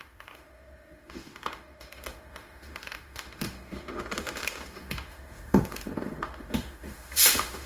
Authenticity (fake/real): fake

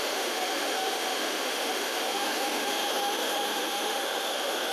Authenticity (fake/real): fake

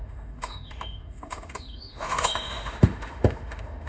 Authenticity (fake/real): fake